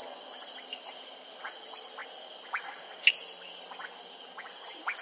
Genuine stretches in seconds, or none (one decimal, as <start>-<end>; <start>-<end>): 0.0-5.0